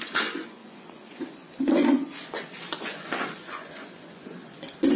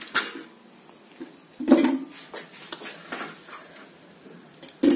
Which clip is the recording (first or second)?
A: second